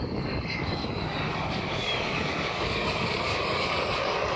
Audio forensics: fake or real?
fake